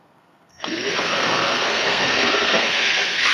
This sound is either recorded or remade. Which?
remade